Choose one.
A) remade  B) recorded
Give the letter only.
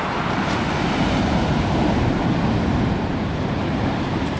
A